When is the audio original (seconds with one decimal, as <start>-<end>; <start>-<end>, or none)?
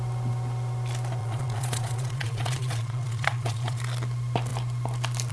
0.0-1.2; 3.8-5.3